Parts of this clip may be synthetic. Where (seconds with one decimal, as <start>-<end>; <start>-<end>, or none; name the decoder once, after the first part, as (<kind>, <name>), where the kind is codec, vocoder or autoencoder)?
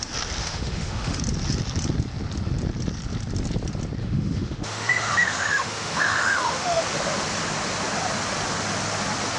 0.4-1.2 (autoencoder, DAC-VAE); 4.0-6.8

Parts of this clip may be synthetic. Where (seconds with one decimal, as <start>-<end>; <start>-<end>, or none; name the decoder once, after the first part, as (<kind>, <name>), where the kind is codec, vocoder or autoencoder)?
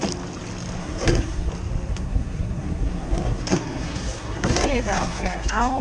0.8-1.5 (codec, SNAC); 1.9-5.8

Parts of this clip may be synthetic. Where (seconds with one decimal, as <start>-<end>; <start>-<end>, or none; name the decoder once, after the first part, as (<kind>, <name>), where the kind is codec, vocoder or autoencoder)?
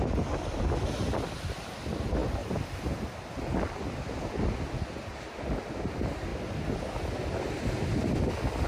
none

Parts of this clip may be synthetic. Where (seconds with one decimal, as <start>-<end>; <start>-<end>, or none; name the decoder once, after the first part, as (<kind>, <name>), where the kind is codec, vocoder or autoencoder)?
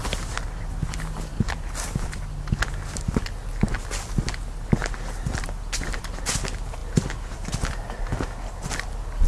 none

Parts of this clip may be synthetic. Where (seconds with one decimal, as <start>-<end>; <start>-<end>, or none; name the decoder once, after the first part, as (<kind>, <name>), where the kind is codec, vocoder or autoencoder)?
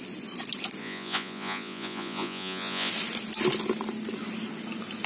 0.8-2.9 (vocoder, Vocos)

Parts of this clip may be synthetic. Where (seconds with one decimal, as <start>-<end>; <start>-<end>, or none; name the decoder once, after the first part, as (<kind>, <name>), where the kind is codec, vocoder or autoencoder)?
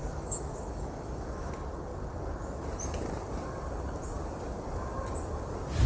0.0-1.5 (autoencoder, DAC-VAE)